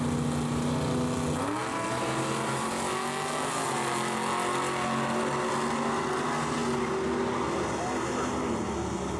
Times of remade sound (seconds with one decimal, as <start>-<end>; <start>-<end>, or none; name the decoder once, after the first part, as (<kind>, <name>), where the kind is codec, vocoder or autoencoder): none